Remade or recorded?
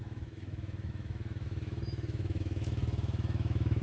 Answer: remade